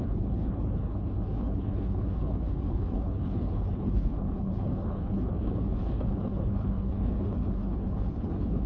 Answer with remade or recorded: remade